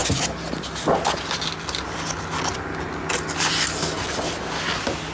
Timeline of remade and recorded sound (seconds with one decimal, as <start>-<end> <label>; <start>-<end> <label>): 0.0-5.1 recorded